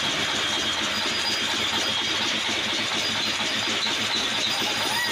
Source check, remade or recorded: recorded